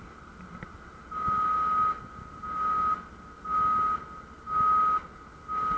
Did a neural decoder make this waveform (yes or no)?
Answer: no